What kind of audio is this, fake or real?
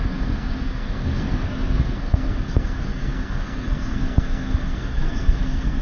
fake